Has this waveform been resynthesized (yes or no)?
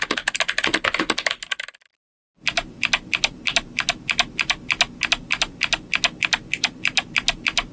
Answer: no